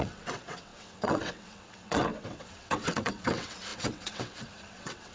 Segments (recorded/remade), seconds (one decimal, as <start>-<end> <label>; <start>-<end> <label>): 0.0-5.1 remade